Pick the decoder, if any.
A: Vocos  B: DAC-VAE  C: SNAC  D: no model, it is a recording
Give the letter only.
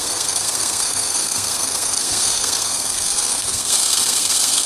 C